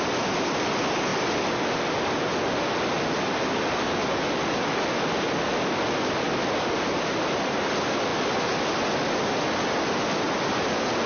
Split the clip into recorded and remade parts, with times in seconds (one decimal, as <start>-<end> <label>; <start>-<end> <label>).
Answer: 0.0-11.1 recorded